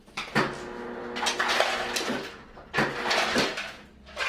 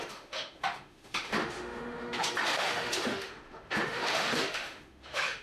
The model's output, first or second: second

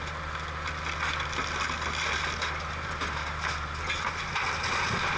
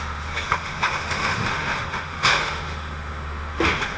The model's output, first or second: second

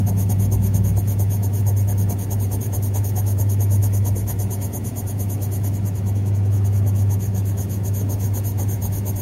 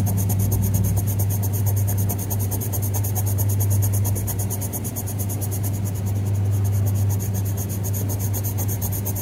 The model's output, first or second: first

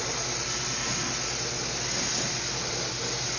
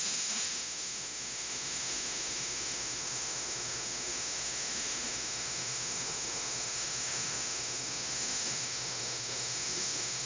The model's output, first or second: second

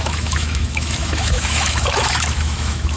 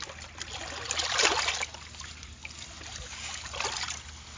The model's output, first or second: first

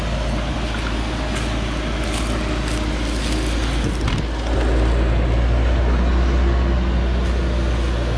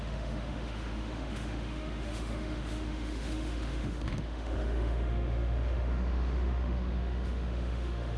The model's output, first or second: second